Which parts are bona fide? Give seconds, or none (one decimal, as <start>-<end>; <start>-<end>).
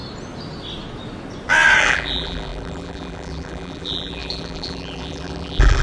0.0-1.8